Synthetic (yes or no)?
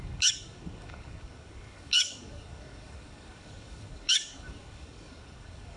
yes